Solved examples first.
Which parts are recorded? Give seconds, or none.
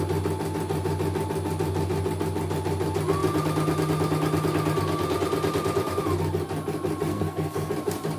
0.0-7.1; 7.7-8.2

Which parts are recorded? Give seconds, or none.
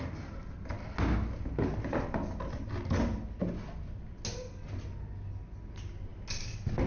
0.0-6.9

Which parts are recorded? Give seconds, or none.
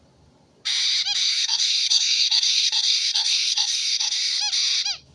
0.0-1.3; 4.4-5.1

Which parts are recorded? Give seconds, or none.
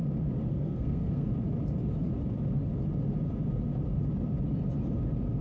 0.0-0.5; 1.3-5.4